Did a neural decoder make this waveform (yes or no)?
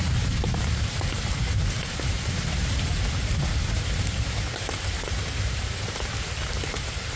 yes